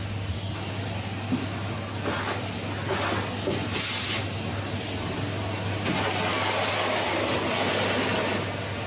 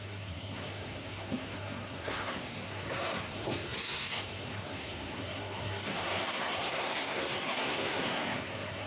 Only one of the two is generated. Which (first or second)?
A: second